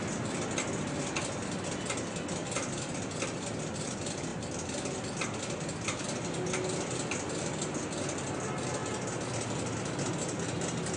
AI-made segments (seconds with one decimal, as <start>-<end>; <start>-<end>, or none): none